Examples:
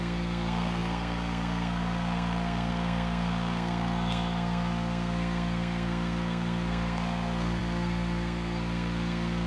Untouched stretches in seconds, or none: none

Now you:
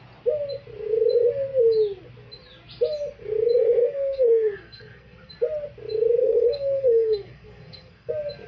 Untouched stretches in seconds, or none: 0.0-3.8; 5.3-6.2; 8.1-8.5

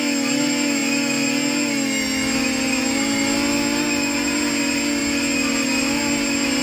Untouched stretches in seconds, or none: 0.0-6.6